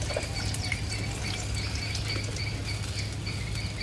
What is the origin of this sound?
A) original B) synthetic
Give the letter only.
A